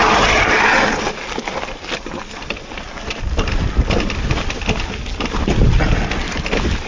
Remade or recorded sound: recorded